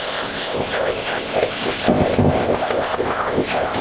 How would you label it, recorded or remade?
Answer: remade